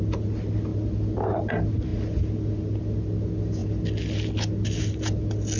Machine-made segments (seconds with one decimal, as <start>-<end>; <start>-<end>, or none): none

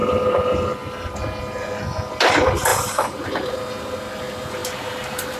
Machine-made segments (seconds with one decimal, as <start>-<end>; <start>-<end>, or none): 2.7-3.5; 4.6-5.4

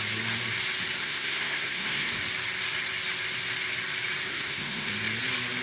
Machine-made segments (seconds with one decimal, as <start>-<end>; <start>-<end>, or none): 1.0-2.2; 4.3-4.9

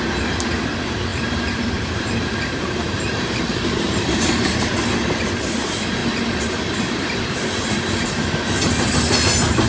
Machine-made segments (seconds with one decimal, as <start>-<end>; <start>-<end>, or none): 1.1-4.8; 6.0-7.5